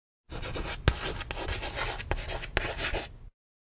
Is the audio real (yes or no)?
yes